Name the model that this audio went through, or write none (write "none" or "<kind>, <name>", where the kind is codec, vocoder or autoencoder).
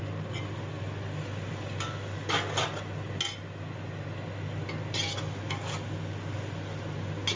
none